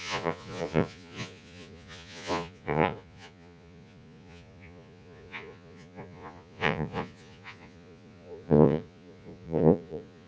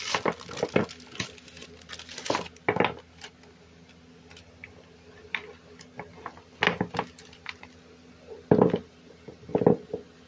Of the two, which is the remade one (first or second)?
first